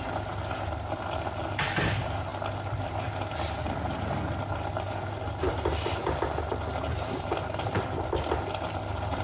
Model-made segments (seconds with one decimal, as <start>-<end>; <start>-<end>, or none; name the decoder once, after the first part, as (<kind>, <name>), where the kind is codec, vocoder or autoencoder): none